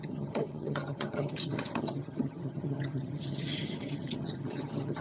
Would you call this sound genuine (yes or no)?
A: no